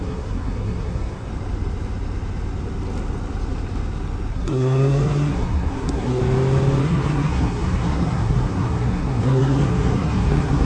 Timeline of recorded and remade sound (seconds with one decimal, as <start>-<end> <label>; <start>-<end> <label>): 0.0-1.3 remade; 1.3-4.3 recorded; 4.3-6.2 remade; 6.2-6.8 recorded; 6.8-10.6 remade